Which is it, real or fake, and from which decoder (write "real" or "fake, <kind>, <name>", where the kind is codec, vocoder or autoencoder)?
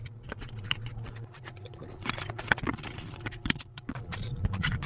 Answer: fake, vocoder, Vocos